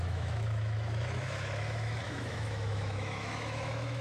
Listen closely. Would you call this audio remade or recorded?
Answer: remade